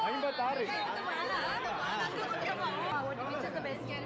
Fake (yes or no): no